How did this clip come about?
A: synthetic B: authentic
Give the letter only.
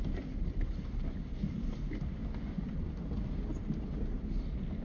B